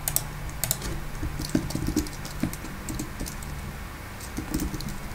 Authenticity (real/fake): real